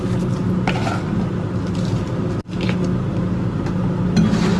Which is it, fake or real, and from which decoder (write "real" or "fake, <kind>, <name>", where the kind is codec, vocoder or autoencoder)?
real